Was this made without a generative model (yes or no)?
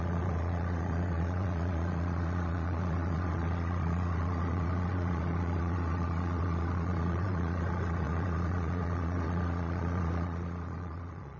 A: no